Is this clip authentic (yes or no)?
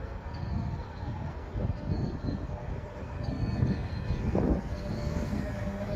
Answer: no